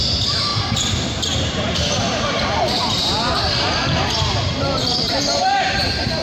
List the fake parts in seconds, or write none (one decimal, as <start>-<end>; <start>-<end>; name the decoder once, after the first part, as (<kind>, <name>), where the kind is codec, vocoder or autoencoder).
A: 0.0-0.5 (vocoder, BigVGAN v2); 1.5-6.2